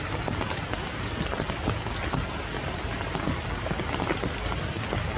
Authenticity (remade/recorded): recorded